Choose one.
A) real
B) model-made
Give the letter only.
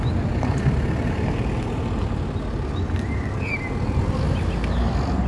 A